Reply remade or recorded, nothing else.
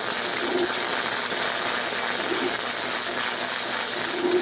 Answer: recorded